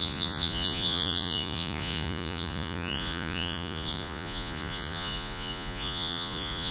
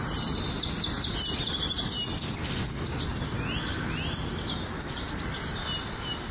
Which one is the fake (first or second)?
first